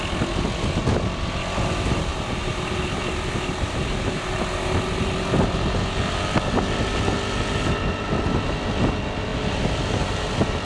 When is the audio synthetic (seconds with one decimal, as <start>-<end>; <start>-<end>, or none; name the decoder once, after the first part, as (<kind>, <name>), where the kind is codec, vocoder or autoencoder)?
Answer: none